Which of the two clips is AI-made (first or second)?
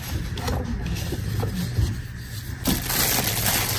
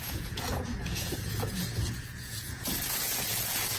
second